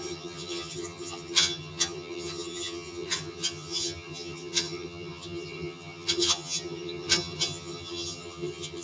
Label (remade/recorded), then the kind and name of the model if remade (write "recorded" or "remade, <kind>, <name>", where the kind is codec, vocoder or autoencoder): remade, vocoder, HiFi-GAN